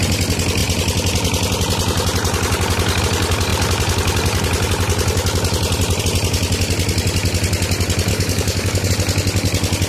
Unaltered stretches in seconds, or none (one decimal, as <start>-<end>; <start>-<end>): 0.0-8.1; 8.9-9.9